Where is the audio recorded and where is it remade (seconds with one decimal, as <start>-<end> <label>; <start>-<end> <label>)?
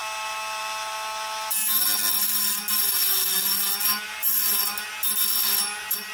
0.0-6.1 recorded